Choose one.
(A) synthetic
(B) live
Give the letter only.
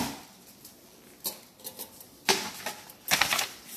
B